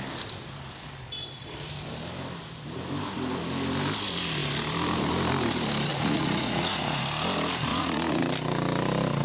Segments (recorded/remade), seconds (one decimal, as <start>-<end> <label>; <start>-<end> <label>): 0.0-5.9 recorded; 5.9-7.0 remade; 7.0-7.7 recorded; 7.7-8.2 remade; 8.2-9.2 recorded